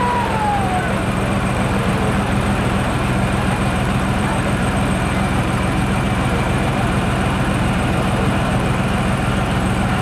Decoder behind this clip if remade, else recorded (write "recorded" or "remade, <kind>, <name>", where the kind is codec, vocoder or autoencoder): remade, vocoder, BigVGAN v2